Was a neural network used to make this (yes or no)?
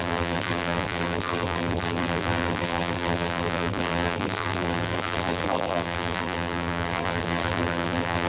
yes